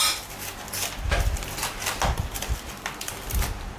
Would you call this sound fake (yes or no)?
no